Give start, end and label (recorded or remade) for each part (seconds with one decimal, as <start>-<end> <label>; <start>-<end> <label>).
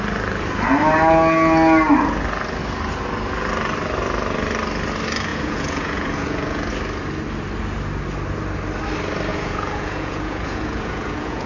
0.0-5.3 recorded; 5.3-6.7 remade; 6.7-9.3 recorded; 9.3-11.5 remade